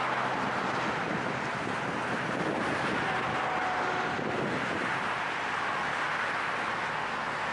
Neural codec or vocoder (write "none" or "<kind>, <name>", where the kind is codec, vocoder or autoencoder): none